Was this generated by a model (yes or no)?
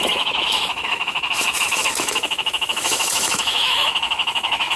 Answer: yes